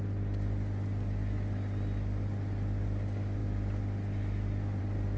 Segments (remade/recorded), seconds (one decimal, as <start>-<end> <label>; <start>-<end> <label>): 0.0-5.2 recorded